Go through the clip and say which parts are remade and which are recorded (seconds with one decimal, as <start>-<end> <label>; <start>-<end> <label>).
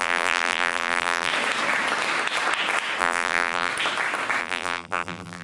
0.0-1.3 remade; 1.3-3.0 recorded; 3.0-3.7 remade; 3.7-4.4 recorded; 4.4-5.4 remade